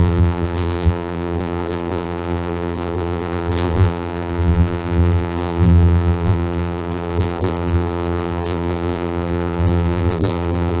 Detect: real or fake fake